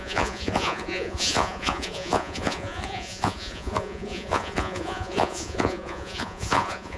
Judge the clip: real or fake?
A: fake